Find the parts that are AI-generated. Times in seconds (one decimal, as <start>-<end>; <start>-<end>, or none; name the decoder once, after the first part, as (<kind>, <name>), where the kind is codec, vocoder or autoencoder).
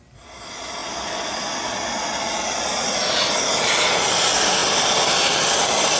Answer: none